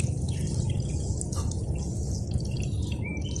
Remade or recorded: recorded